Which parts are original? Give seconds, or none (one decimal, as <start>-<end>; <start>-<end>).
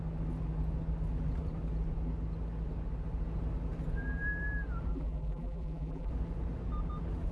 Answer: 0.0-4.9; 6.1-7.3